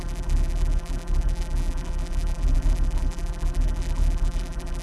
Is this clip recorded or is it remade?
remade